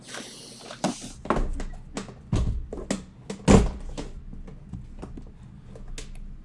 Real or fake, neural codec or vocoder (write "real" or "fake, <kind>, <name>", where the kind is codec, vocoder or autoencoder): real